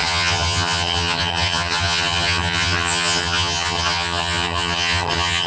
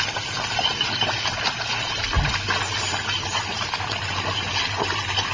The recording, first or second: second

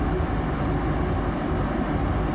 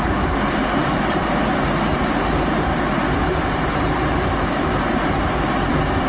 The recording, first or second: first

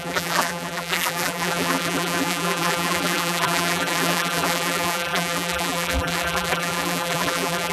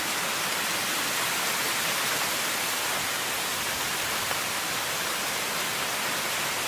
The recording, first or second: second